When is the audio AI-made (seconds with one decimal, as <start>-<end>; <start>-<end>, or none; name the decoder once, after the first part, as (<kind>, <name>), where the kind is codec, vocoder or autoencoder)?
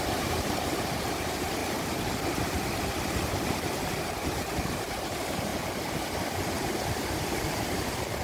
0.0-1.6 (vocoder, BigVGAN v2); 3.8-5.5; 6.5-8.2